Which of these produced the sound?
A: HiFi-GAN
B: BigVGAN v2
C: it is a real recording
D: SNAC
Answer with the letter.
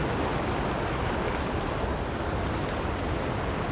C